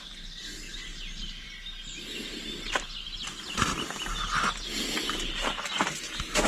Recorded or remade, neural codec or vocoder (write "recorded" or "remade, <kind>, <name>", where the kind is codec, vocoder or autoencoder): recorded